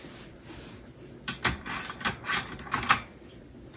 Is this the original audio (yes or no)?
yes